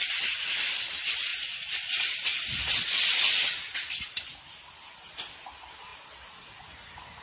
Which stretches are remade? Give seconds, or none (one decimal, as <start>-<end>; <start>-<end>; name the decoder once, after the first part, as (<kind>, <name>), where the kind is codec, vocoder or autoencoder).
none